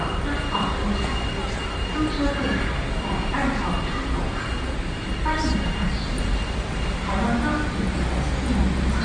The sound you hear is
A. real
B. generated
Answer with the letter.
A